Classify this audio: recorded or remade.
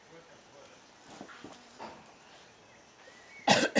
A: recorded